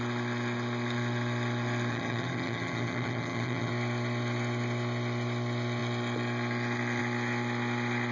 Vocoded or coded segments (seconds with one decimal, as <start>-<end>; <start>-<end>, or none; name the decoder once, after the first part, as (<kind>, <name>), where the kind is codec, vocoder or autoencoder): 1.9-3.7 (vocoder, HiFi-GAN)